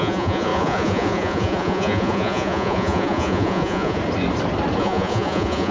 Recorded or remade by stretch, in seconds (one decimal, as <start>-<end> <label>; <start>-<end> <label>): 0.0-4.0 remade; 4.0-4.8 recorded; 4.8-5.7 remade